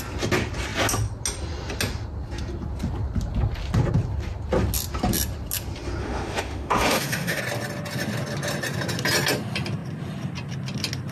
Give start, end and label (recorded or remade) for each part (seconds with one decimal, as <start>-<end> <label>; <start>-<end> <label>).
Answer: 0.0-6.0 recorded; 6.0-7.4 remade; 7.4-11.1 recorded